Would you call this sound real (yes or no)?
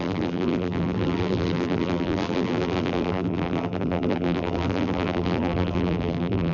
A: no